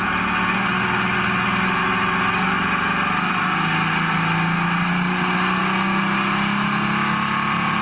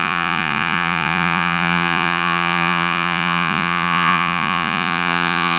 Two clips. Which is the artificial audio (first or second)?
second